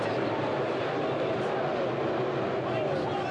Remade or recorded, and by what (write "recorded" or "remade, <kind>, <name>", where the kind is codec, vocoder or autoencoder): recorded